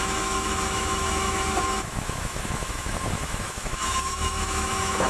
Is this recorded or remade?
remade